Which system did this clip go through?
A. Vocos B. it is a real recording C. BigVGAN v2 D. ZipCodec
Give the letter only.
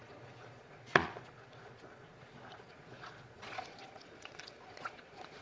A